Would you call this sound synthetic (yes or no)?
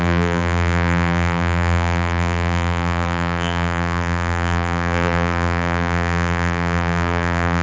yes